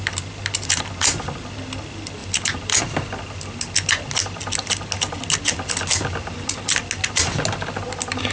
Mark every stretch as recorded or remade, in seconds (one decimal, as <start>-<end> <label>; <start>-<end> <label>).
0.0-8.3 recorded